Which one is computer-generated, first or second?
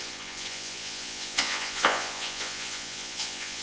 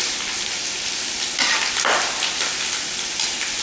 first